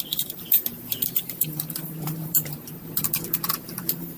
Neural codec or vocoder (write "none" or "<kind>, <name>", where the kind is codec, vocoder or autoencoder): vocoder, BigVGAN v2